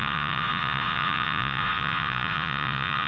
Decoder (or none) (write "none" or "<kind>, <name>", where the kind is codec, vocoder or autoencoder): vocoder, Vocos